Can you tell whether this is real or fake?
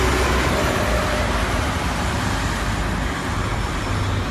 real